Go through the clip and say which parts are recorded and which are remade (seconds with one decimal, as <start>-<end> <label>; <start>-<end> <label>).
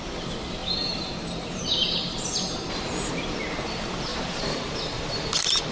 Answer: 0.0-0.6 recorded; 0.6-3.4 remade; 3.4-4.1 recorded; 4.1-5.0 remade; 5.0-5.7 recorded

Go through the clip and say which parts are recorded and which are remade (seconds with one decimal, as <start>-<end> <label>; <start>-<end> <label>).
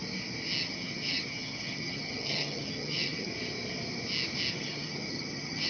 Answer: 0.0-0.6 recorded; 0.6-3.3 remade; 3.3-4.5 recorded; 4.5-5.7 remade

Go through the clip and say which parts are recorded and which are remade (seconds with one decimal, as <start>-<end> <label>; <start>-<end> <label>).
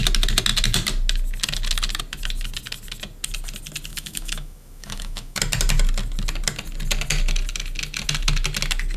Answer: 0.0-3.9 recorded; 3.9-5.4 remade; 5.4-9.0 recorded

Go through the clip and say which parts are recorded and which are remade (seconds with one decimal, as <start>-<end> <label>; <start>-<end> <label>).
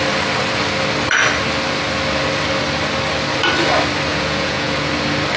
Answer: 0.0-4.1 recorded; 4.1-4.9 remade; 4.9-5.4 recorded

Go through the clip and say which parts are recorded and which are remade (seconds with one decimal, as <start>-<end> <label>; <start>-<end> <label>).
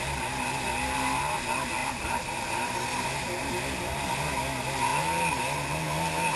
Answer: 0.0-1.8 recorded; 1.8-3.5 remade; 3.5-6.4 recorded